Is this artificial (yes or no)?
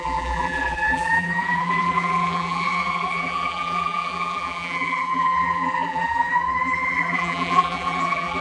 yes